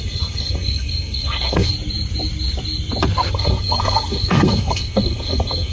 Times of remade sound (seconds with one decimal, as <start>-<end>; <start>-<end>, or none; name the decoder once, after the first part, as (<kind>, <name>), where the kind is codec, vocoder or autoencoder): 0.0-1.7 (codec, SNAC); 3.3-5.7